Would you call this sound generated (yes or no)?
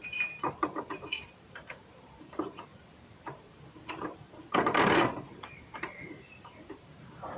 yes